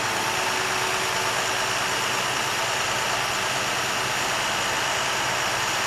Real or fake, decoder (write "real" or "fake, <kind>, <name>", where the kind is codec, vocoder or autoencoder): real